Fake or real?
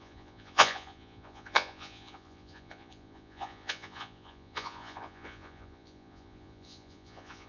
fake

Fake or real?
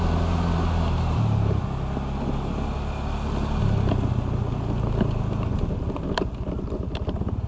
real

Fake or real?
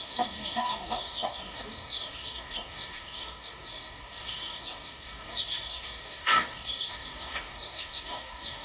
fake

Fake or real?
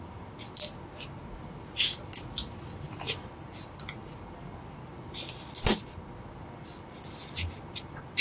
real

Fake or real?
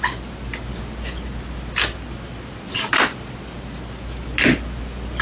real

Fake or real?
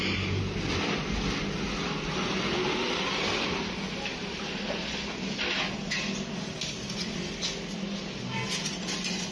real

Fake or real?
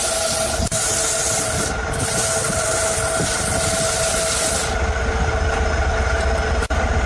real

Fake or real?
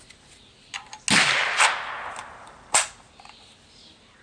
real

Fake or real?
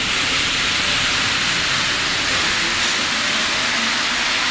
real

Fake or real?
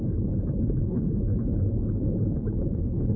fake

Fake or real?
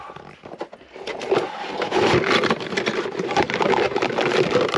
real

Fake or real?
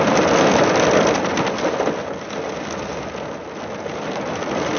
real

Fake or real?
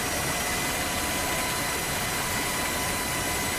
fake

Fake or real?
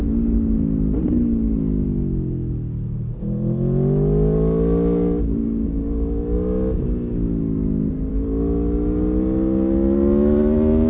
real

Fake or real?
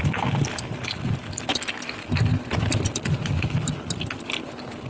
real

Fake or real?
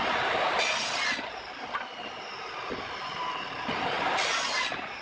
real